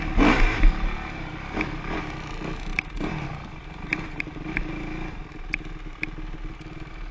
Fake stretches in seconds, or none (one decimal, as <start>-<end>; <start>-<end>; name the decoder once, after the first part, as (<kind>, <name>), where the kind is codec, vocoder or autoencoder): 1.3-2.0 (vocoder, BigVGAN v2); 2.7-4.7